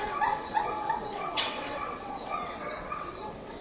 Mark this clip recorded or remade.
remade